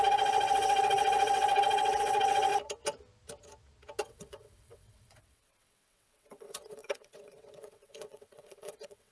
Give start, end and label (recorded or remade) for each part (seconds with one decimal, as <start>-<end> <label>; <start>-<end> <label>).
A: 0.0-2.5 remade; 2.5-4.0 recorded; 4.0-9.1 remade